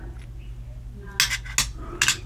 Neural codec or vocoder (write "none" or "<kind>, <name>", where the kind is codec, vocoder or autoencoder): none